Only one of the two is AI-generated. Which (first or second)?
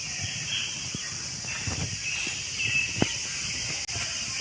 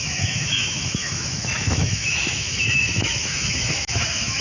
second